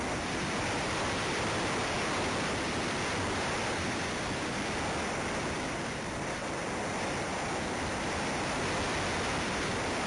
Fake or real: real